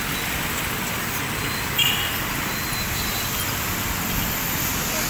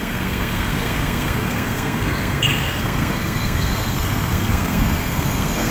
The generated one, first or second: second